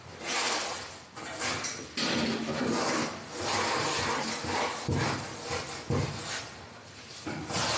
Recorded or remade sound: recorded